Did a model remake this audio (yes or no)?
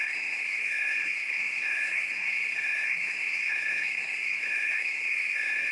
yes